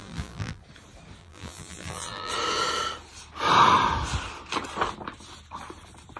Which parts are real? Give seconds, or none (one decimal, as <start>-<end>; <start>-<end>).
0.6-1.2; 2.3-6.2

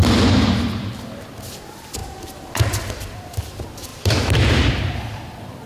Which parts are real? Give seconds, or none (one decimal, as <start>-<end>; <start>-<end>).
0.0-2.0; 2.9-3.9; 4.7-5.7